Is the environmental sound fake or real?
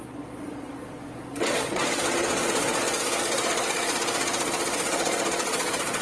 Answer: fake